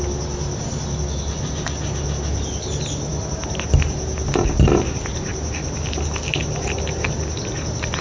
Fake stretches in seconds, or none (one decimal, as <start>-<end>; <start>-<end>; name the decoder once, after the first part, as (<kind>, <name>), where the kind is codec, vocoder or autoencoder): none